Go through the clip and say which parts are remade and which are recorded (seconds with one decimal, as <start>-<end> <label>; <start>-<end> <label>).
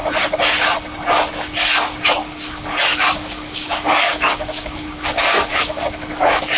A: 0.0-2.2 recorded; 2.2-6.6 remade